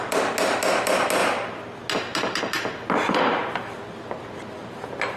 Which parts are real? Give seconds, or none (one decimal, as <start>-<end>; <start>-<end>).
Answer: 0.0-5.2